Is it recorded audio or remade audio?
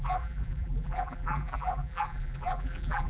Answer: remade